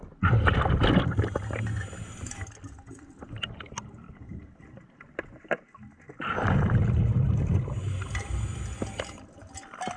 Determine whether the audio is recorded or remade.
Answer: recorded